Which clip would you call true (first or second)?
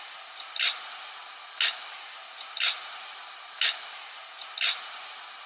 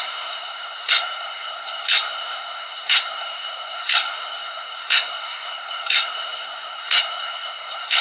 first